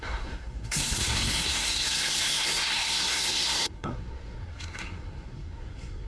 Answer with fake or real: fake